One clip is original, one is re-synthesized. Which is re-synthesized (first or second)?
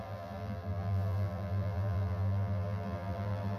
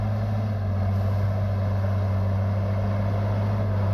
first